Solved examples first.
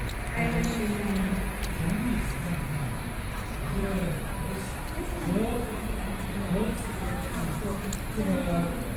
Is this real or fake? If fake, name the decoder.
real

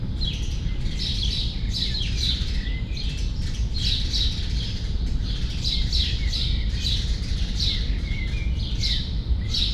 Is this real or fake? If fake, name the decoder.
real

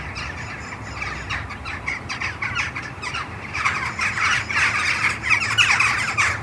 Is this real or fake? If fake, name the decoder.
real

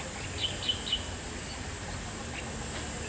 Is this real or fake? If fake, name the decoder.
real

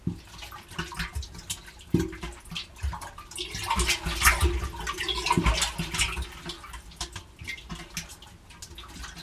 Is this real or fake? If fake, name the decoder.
real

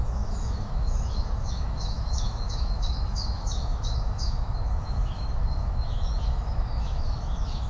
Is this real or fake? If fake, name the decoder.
fake, autoencoder, DAC-VAE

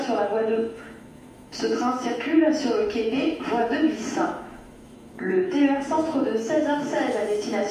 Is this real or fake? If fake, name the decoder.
fake, autoencoder, DAC-VAE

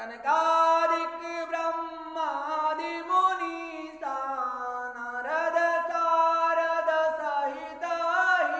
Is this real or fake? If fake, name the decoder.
real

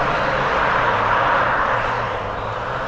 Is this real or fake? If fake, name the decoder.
real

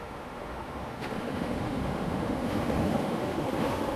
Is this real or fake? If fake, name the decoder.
fake, autoencoder, DAC-VAE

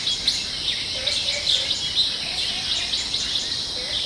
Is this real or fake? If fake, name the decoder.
real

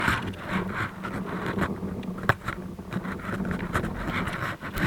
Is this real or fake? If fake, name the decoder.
real